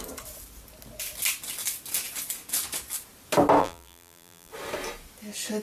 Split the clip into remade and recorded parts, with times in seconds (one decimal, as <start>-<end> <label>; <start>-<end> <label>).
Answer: 0.0-3.6 recorded; 3.6-4.5 remade; 4.5-5.6 recorded